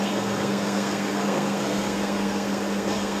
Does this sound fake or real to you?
fake